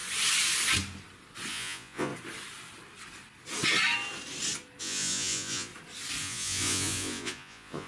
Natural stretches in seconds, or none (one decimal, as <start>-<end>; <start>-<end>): 0.0-1.5; 2.1-4.8; 5.7-6.2